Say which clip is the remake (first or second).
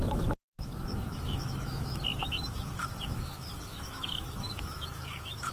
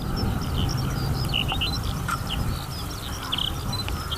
first